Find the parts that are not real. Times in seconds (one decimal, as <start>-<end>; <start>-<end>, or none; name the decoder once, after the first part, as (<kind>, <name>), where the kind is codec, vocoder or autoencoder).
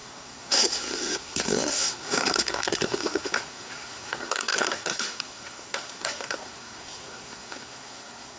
0.0-8.4 (codec, SNAC)